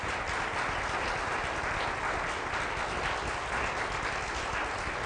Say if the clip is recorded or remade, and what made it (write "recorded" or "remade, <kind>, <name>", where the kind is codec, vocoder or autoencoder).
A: recorded